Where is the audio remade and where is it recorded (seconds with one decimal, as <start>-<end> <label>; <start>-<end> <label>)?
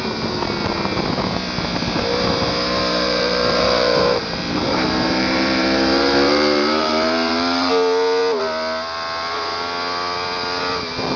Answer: 0.0-2.9 recorded; 2.9-7.7 remade; 7.7-11.2 recorded